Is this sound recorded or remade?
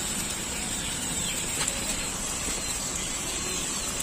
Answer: remade